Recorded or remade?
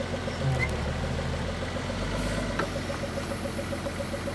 recorded